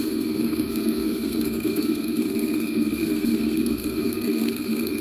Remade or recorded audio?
remade